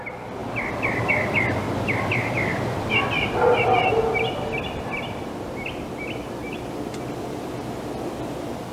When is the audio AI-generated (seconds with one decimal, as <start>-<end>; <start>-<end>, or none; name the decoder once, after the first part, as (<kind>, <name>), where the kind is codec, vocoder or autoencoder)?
none

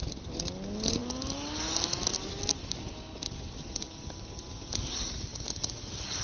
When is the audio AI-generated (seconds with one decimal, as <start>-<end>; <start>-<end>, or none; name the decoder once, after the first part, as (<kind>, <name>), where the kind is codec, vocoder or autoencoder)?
none